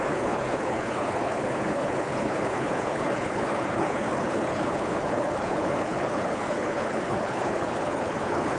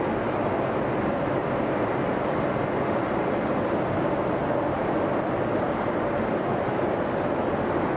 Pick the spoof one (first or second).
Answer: first